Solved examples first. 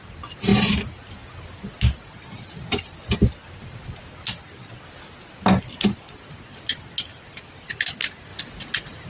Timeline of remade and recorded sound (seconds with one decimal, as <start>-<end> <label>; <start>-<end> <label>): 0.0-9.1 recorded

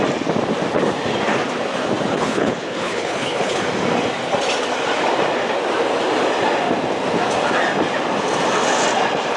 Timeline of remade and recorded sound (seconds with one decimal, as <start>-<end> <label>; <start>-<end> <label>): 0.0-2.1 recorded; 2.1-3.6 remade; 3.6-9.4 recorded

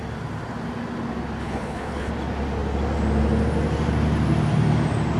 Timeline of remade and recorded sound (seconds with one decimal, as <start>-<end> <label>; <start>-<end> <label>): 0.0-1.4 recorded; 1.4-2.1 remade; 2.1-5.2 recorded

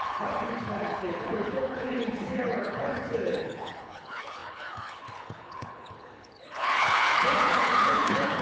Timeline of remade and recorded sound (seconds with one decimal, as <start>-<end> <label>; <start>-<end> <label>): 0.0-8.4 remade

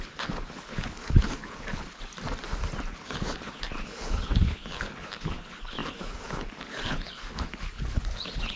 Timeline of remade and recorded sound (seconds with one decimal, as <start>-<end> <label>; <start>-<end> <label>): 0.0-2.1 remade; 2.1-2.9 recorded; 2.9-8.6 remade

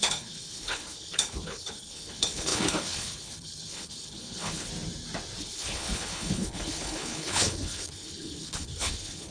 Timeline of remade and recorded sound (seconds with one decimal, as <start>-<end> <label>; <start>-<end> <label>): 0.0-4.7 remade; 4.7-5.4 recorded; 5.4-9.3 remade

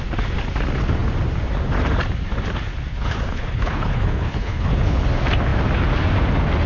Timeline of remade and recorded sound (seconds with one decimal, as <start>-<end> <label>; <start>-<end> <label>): 0.0-2.9 recorded; 2.9-5.1 remade; 5.1-6.7 recorded